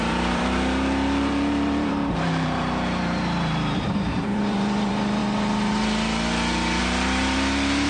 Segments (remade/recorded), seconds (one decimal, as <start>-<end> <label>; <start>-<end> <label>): 0.0-5.2 remade; 5.2-6.8 recorded; 6.8-7.9 remade